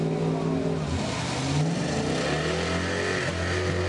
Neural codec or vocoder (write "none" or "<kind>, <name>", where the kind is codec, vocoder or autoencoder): none